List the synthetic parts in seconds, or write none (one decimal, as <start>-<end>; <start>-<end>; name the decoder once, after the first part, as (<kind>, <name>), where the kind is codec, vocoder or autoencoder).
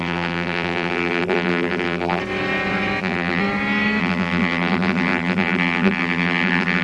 0.0-2.2 (vocoder, BigVGAN v2); 3.0-3.4; 4.0-6.8